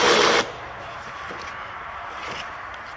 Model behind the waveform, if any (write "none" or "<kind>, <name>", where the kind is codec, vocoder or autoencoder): vocoder, BigVGAN v2